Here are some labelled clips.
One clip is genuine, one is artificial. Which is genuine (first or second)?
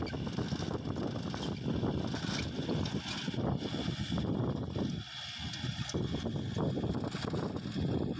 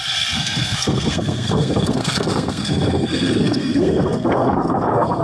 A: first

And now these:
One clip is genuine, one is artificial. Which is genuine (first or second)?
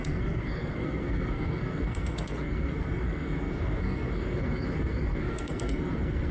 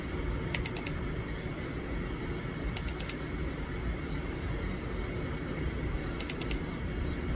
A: second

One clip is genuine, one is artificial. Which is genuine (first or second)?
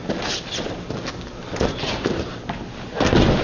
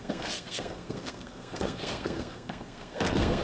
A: first